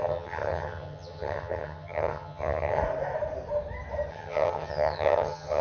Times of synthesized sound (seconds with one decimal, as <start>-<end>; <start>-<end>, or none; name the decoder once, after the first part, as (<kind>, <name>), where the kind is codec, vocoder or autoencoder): 0.0-2.8 (vocoder, HiFi-GAN); 4.1-5.6